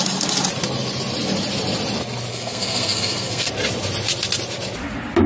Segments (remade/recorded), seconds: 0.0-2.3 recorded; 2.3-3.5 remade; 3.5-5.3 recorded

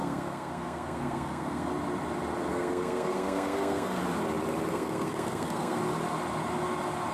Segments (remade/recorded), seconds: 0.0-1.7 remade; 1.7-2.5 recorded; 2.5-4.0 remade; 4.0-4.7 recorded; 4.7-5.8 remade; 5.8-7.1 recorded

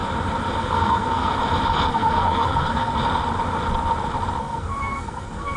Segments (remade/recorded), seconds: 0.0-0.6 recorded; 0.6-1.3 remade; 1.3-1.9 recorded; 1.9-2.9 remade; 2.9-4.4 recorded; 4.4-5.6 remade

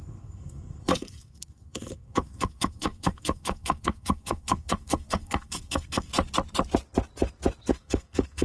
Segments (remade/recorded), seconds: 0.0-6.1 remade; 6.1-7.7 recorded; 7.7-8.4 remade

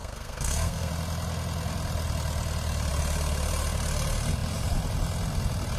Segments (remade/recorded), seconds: 0.0-0.9 remade; 0.9-5.8 recorded